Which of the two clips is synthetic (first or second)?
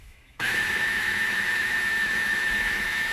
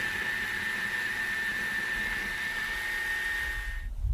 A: first